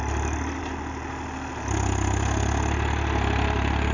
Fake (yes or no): no